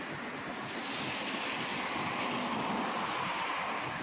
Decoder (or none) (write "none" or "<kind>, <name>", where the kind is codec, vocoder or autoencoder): none